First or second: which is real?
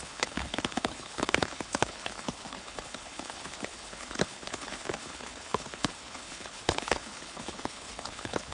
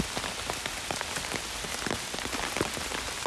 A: second